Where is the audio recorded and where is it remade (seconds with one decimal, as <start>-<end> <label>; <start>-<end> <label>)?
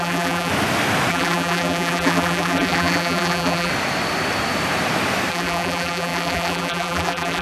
0.0-0.5 remade; 0.5-1.1 recorded; 1.1-3.7 remade; 3.7-5.3 recorded; 5.3-7.4 remade